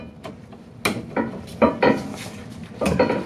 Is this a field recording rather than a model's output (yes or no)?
yes